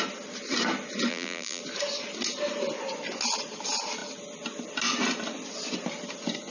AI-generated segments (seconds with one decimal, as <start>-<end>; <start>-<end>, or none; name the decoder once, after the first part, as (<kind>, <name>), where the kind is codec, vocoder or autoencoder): 1.1-1.6 (vocoder, BigVGAN v2)